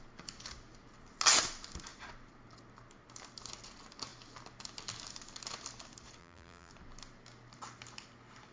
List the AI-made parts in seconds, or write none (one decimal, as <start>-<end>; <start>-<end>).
6.2-6.7